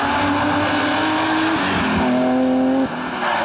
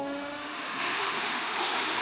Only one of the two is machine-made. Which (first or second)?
second